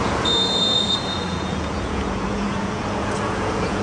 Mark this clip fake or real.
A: fake